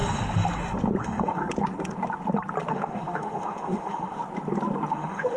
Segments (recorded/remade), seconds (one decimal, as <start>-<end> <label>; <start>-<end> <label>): 0.0-1.0 recorded; 1.0-1.4 remade; 1.4-2.7 recorded; 2.7-4.2 remade; 4.2-4.9 recorded; 4.9-5.4 remade